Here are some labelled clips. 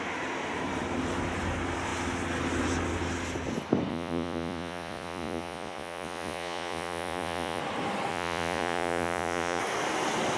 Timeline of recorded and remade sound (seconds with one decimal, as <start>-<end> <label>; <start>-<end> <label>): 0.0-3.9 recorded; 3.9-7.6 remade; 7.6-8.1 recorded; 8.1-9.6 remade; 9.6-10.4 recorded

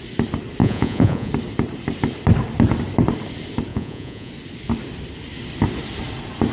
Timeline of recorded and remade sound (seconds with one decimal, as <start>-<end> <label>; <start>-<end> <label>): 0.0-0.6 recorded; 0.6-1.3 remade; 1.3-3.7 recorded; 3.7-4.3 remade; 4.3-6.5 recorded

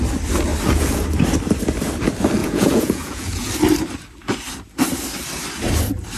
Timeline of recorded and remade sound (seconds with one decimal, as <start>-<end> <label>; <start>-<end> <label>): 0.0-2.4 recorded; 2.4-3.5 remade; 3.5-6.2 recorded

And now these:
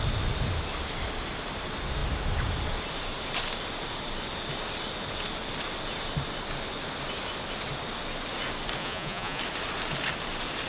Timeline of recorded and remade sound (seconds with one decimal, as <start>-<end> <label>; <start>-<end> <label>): 0.0-8.8 recorded; 8.8-9.4 remade; 9.4-10.7 recorded

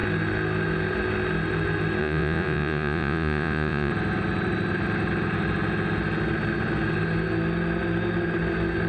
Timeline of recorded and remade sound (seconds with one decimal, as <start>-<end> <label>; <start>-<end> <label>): 0.0-2.0 recorded; 2.0-3.9 remade; 3.9-8.9 recorded

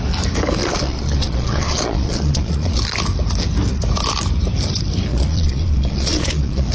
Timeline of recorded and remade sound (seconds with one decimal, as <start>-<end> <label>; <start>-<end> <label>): 0.0-0.6 recorded; 0.6-2.8 remade; 2.8-5.1 recorded; 5.1-6.7 remade

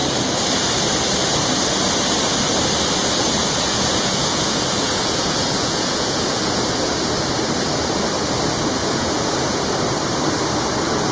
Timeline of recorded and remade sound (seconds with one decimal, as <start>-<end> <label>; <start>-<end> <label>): 0.0-3.4 recorded; 3.4-6.8 remade; 6.8-8.8 recorded; 8.8-9.6 remade; 9.6-11.1 recorded

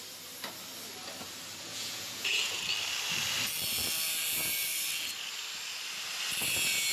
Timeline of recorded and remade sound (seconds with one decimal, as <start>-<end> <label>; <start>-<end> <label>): 0.0-1.7 recorded; 1.7-2.6 remade; 2.6-6.9 recorded